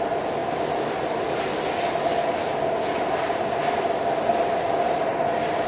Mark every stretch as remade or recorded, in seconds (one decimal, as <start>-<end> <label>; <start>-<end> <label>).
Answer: 0.0-5.7 recorded